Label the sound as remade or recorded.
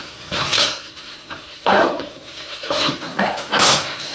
remade